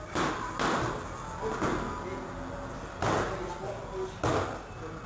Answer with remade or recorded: recorded